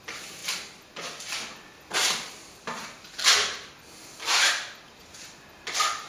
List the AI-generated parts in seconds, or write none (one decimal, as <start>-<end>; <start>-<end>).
none